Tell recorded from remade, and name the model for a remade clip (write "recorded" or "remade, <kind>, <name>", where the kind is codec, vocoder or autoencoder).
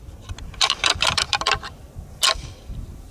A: remade, vocoder, BigVGAN v2